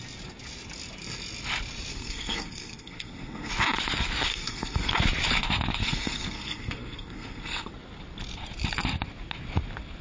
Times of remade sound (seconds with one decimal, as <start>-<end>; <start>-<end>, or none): 1.9-3.5; 4.3-4.9; 5.8-7.7